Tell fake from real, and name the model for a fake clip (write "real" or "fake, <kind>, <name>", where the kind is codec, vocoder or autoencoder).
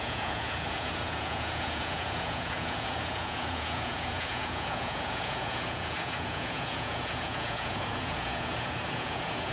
fake, vocoder, Vocos